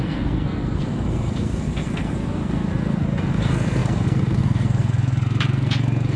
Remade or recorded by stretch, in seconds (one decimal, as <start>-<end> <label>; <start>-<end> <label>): 0.0-6.2 remade